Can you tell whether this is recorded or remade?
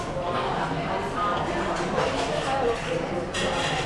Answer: recorded